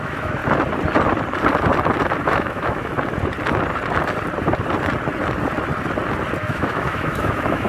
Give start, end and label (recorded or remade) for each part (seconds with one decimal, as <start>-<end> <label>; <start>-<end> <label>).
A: 0.0-0.4 remade; 0.4-2.2 recorded; 2.2-2.9 remade; 2.9-6.4 recorded; 6.4-7.7 remade

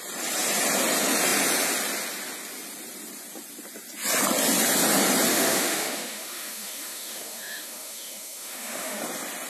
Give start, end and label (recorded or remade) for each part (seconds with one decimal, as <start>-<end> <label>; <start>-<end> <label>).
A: 0.0-5.3 recorded; 5.3-9.0 remade; 9.0-9.5 recorded

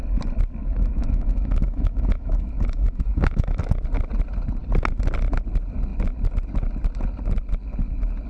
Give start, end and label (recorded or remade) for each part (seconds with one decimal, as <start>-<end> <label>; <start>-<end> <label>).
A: 0.0-0.6 recorded; 0.6-3.6 remade; 3.6-8.3 recorded

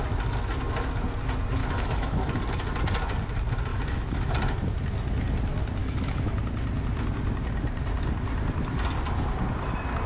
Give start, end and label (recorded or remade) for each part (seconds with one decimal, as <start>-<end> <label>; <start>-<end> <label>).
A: 0.0-1.6 recorded; 1.6-2.4 remade; 2.4-3.7 recorded; 3.7-4.3 remade; 4.3-5.8 recorded; 5.8-6.4 remade; 6.4-10.1 recorded

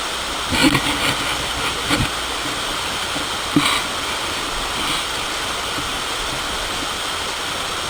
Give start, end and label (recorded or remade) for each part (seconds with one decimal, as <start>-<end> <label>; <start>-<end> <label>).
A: 0.0-7.9 recorded

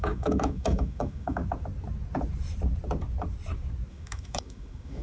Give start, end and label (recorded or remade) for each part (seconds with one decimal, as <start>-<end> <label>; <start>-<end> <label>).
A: 0.0-1.4 remade; 1.4-3.9 recorded; 3.9-5.0 remade